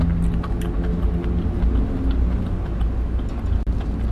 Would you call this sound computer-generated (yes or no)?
no